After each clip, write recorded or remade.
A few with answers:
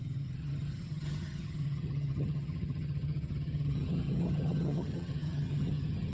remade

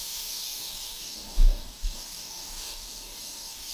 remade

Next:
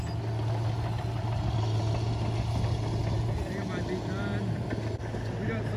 recorded